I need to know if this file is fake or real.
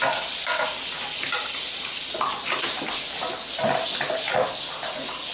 real